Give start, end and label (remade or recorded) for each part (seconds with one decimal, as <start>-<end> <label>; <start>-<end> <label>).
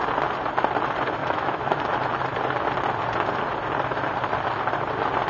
0.0-1.2 recorded; 1.2-1.8 remade; 1.8-5.3 recorded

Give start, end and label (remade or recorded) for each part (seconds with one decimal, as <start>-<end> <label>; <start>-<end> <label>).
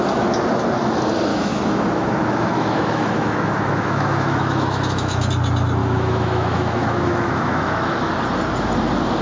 0.0-1.3 recorded; 1.3-5.3 remade; 5.3-5.8 recorded; 5.8-8.1 remade; 8.1-9.2 recorded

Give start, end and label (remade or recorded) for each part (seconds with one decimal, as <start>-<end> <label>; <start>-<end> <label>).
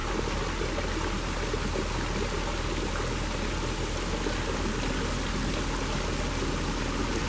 0.0-7.3 recorded